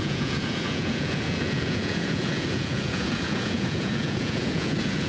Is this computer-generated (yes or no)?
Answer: yes